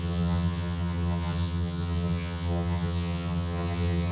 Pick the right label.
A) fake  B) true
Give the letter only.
A